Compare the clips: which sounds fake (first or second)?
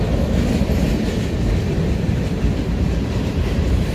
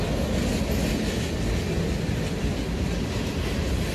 first